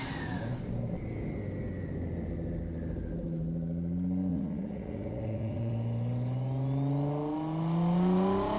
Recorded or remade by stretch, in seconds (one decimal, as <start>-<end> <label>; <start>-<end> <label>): 0.0-4.3 recorded; 4.3-5.7 remade; 5.7-8.6 recorded